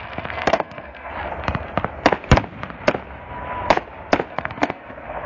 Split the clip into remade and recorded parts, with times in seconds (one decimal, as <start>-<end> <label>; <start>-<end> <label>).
0.0-1.1 remade; 1.1-4.3 recorded; 4.3-5.3 remade

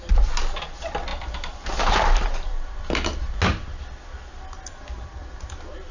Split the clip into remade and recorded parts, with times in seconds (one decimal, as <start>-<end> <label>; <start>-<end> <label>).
0.0-5.9 recorded